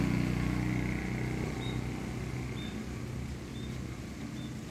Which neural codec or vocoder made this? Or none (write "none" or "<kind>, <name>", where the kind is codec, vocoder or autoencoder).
none